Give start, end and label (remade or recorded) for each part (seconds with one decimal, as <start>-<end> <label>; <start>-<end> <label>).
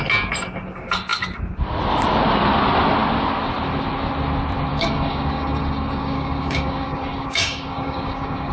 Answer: 0.0-4.7 recorded; 4.7-8.5 remade